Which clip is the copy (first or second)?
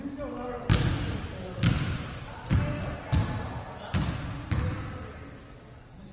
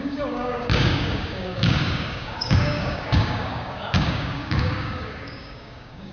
second